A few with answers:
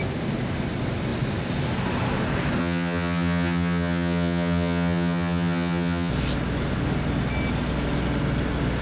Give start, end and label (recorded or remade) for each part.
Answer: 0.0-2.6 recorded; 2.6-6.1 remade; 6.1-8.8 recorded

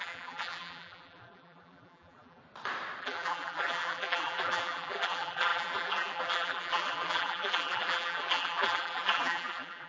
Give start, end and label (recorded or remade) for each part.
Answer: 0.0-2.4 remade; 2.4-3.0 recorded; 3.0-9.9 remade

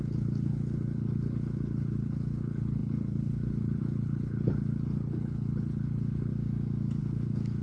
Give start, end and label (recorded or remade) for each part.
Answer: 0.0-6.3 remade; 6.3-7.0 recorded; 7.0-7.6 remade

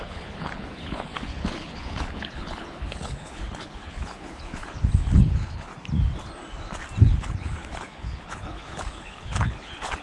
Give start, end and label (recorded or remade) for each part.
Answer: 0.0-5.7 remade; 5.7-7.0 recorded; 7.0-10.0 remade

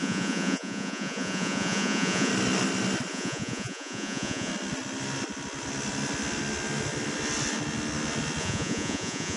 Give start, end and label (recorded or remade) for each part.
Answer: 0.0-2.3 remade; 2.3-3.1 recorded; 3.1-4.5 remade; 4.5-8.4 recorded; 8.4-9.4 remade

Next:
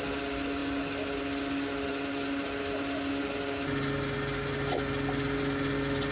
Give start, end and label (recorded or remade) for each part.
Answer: 0.0-6.1 recorded

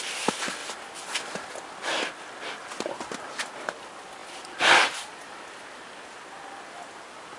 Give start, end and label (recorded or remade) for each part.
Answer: 0.0-0.6 recorded; 0.6-1.9 remade; 1.9-4.2 recorded; 4.2-5.9 remade; 5.9-7.4 recorded